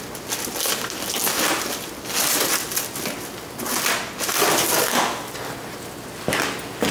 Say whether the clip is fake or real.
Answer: real